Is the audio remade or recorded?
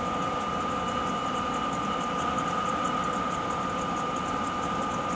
recorded